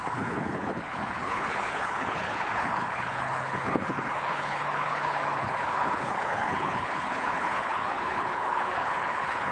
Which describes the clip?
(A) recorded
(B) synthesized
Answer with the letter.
B